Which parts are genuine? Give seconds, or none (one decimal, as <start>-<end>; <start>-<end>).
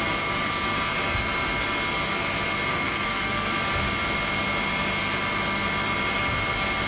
0.0-2.7; 3.5-6.9